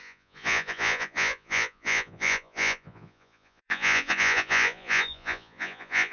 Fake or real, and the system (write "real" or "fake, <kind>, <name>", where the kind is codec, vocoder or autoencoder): fake, vocoder, Vocos